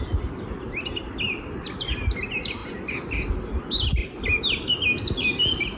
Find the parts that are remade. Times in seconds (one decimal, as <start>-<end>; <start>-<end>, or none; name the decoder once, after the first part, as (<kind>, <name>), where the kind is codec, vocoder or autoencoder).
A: none